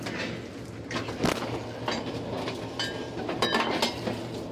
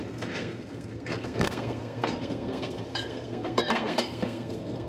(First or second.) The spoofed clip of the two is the second